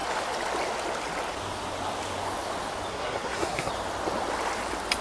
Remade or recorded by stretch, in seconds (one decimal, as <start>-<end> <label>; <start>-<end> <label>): 0.0-2.9 recorded; 2.9-3.7 remade; 3.7-5.0 recorded